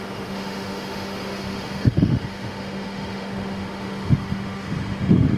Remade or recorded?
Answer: remade